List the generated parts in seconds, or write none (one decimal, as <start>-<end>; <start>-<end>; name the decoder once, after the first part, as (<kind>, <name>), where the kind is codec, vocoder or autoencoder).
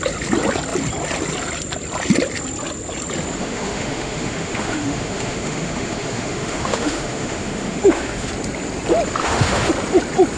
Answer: 3.4-8.3 (autoencoder, DAC-VAE); 9.2-9.7